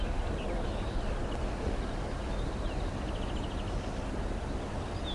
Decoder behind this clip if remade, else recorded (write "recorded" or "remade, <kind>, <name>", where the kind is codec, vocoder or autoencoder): recorded